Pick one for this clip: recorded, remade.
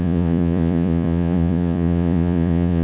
remade